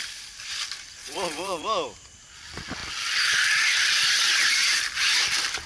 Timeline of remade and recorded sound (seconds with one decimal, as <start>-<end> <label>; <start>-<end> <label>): 0.0-1.0 recorded; 1.0-1.6 remade; 1.6-5.7 recorded